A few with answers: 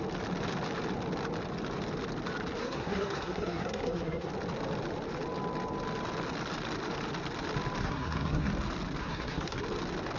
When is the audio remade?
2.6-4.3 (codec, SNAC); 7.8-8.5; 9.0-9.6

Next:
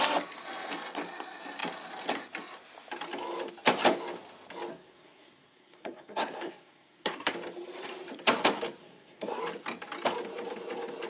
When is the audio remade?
4.7-7.2 (codec, SNAC); 8.8-9.4

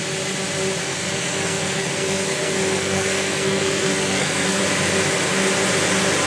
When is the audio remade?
0.8-4.6 (codec, SNAC)